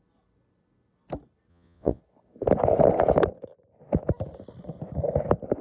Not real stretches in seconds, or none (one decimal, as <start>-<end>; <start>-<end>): 1.5-2.0